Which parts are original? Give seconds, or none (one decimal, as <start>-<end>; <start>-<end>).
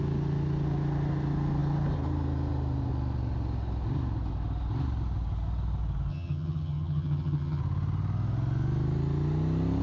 0.0-6.1; 7.6-9.8